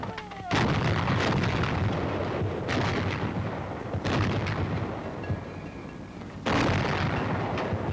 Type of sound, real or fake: real